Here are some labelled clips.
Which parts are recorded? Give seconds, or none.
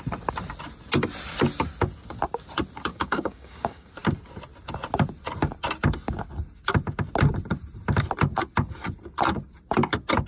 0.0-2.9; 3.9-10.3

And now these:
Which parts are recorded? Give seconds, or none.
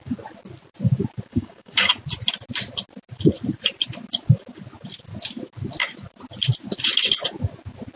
0.0-1.3; 1.9-8.0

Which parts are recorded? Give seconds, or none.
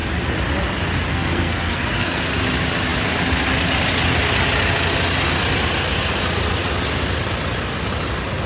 0.0-1.1; 2.2-8.5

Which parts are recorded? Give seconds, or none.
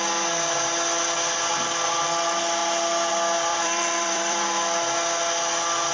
0.0-3.5; 4.6-5.9